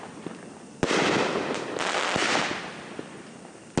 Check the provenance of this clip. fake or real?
real